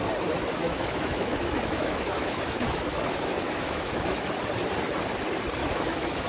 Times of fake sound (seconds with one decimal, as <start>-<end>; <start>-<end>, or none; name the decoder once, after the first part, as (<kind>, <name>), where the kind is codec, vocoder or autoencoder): 0.6-4.3 (autoencoder, DAC-VAE); 5.6-6.3